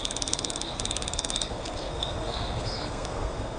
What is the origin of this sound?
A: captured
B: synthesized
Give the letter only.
B